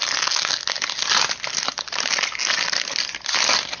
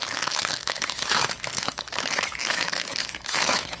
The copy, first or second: second